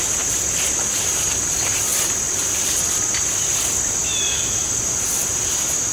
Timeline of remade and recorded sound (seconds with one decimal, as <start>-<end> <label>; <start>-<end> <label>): 0.0-5.9 recorded